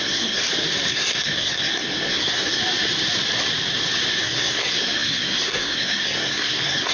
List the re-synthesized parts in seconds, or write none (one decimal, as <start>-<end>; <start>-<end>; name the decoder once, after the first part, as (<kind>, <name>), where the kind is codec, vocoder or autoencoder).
0.0-0.4 (codec, SNAC); 0.9-2.6; 4.2-6.9